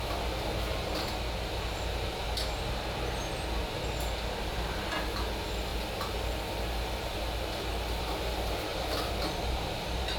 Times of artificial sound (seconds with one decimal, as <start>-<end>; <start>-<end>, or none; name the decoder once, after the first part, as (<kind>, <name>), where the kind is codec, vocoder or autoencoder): 8.7-10.2 (vocoder, BigVGAN v2)

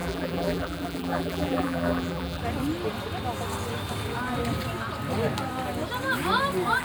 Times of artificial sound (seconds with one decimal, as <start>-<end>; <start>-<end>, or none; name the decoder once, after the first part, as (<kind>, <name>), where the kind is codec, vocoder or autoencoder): 0.0-2.4 (vocoder, BigVGAN v2)